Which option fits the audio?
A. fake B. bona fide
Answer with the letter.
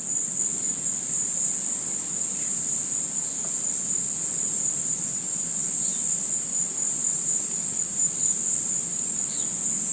B